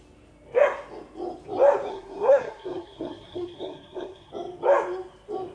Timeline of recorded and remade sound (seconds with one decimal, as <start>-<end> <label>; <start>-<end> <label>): 0.0-1.9 recorded; 1.9-4.3 remade; 4.3-5.5 recorded